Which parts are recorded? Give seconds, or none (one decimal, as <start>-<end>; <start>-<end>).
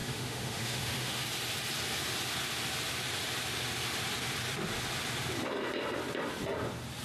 1.2-7.0